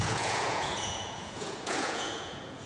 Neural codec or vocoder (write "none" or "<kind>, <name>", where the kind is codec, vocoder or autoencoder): vocoder, Vocos